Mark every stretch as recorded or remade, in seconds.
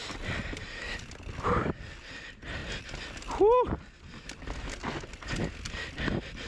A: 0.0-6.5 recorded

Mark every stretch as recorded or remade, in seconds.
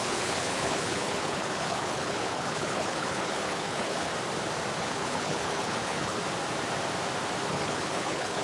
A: 0.0-4.1 remade; 4.1-4.8 recorded; 4.8-6.2 remade; 6.2-7.5 recorded; 7.5-8.4 remade